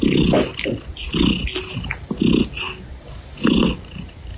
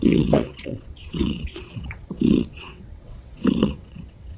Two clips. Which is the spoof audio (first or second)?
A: second